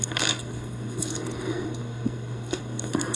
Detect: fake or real fake